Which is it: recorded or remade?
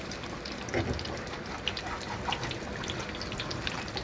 remade